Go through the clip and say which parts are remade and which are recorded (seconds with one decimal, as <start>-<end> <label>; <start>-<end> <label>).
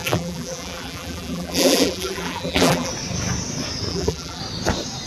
0.0-2.9 remade; 2.9-3.9 recorded; 3.9-4.4 remade; 4.4-5.1 recorded